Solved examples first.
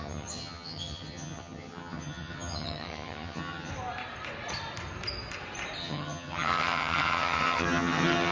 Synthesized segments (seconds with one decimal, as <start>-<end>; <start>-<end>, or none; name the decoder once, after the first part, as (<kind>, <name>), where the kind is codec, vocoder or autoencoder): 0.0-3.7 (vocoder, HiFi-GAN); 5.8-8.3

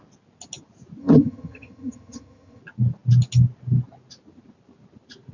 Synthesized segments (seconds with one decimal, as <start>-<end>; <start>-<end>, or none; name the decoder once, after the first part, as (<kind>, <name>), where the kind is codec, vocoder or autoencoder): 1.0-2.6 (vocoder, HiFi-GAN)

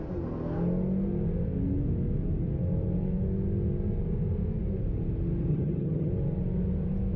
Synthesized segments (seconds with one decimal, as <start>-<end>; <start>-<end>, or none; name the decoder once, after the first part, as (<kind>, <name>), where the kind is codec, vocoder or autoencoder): 5.5-6.1 (vocoder, HiFi-GAN)

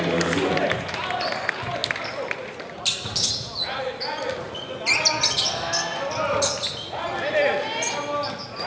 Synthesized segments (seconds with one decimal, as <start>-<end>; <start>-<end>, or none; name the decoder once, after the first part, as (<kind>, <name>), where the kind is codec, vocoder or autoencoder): none

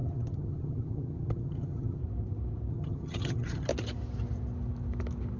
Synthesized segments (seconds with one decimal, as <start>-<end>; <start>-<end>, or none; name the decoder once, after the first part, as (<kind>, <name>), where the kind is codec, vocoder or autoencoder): 0.0-2.0 (vocoder, HiFi-GAN); 2.7-3.7